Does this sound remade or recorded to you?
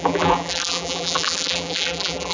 remade